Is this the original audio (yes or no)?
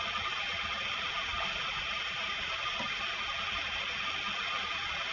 yes